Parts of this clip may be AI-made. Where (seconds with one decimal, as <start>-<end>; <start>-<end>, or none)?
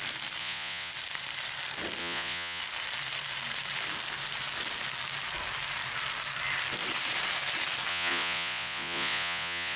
0.4-0.9; 2.0-2.6; 7.9-9.8